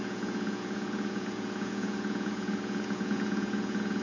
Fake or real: fake